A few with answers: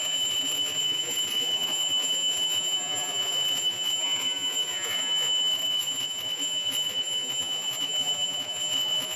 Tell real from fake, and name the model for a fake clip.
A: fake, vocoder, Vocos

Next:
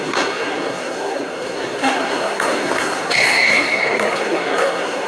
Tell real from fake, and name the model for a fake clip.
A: fake, codec, SNAC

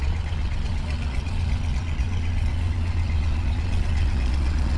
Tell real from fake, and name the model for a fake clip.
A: fake, vocoder, Vocos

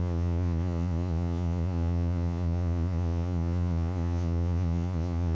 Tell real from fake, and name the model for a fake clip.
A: fake, vocoder, Vocos